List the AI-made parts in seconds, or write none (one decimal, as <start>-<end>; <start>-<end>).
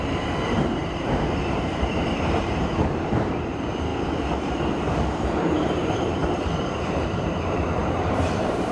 0.0-3.9; 5.5-8.7